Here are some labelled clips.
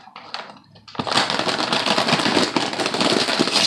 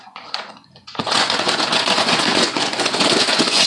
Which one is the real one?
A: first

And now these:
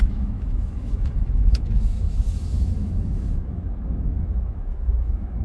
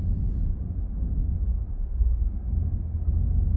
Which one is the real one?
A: second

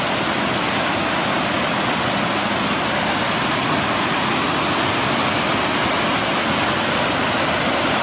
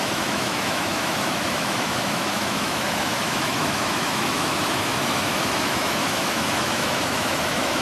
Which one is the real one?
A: first